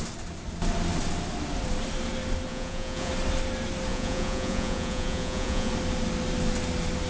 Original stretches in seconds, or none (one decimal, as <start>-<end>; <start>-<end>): 0.0-2.5; 3.1-3.9; 5.7-7.1